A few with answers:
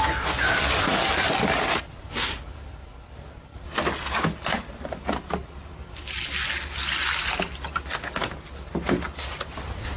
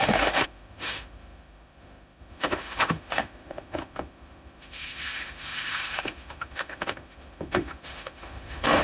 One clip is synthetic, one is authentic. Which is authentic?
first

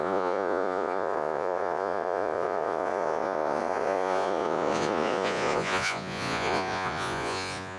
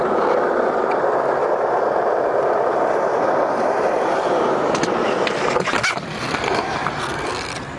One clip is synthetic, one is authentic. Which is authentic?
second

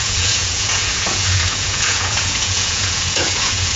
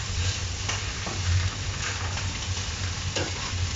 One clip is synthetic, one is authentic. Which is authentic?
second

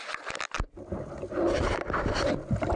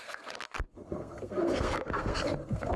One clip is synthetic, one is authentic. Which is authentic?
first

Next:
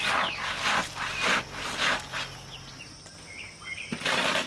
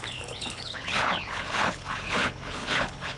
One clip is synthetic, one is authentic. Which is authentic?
first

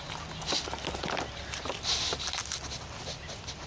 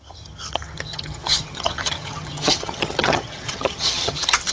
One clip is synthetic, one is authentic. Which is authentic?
first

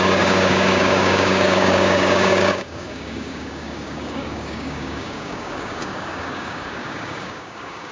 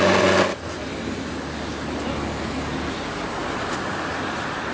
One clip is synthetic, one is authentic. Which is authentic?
second